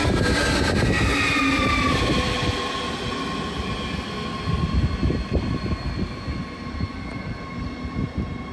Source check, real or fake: real